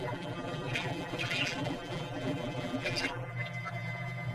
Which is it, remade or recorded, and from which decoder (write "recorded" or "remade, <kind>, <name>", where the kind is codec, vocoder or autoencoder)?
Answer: remade, vocoder, BigVGAN v2